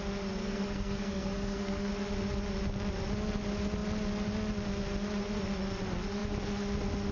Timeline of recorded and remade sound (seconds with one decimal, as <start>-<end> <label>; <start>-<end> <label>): 0.0-0.4 recorded; 0.4-1.9 remade; 1.9-7.1 recorded